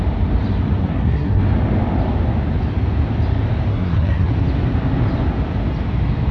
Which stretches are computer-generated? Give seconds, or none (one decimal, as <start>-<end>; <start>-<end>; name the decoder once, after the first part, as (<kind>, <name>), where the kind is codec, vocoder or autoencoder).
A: 0.8-1.4 (codec, SNAC); 3.7-4.3